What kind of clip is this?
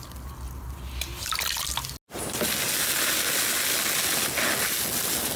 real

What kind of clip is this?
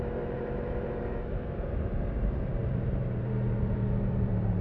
fake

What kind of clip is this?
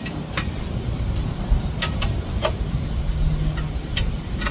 real